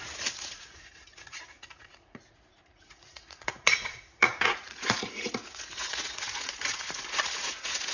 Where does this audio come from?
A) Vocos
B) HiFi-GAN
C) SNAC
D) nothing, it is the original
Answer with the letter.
A